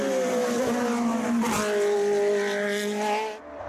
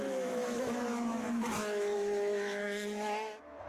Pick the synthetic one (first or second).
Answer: second